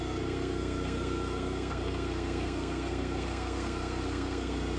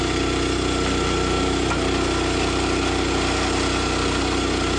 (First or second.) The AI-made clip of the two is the first